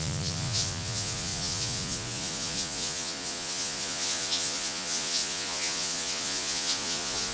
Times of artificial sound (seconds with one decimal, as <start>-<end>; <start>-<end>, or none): 0.0-7.3